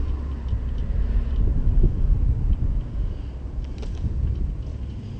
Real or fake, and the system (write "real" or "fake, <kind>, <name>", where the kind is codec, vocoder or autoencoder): real